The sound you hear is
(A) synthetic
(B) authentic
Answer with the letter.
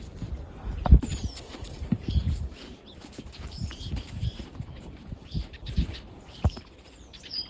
A